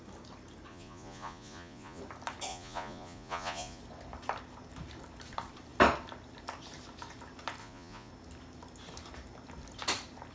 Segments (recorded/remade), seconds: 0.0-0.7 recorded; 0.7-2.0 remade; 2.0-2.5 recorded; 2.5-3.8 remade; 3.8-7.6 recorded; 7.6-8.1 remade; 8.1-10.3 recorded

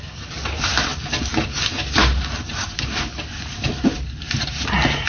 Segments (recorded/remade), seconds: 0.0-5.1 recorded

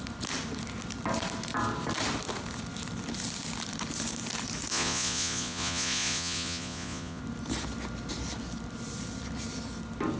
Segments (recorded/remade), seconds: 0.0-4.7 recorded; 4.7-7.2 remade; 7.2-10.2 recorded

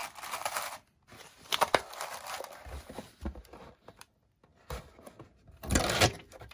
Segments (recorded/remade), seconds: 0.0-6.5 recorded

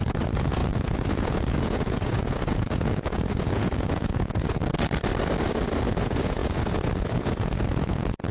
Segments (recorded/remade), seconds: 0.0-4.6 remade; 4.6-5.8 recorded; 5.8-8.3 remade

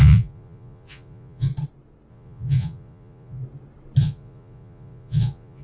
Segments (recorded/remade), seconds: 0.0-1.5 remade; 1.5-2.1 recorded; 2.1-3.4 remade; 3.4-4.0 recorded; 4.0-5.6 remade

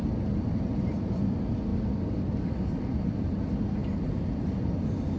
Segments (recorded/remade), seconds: 0.0-5.2 recorded